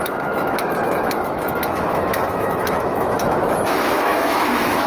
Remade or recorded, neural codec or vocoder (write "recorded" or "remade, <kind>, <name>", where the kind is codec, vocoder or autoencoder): remade, autoencoder, DAC-VAE